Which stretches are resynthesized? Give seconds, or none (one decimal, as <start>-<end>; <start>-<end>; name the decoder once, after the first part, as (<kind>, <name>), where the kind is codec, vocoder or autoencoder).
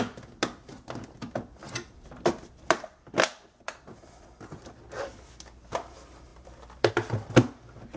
1.6-5.7 (vocoder, BigVGAN v2); 6.3-6.9